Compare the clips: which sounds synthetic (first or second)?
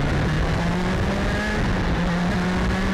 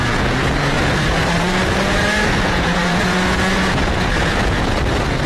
second